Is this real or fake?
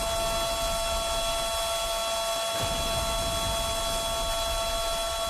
real